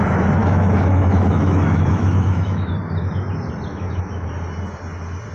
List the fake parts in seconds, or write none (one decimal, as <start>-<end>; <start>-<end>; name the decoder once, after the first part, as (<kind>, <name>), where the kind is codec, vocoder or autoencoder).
0.4-2.7 (autoencoder, DAC-VAE); 3.7-4.3